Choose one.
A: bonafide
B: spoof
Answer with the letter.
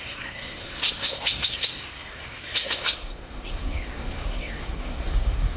B